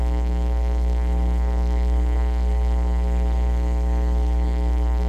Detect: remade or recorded remade